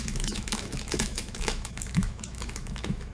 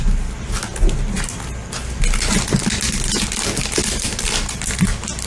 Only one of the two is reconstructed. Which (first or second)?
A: first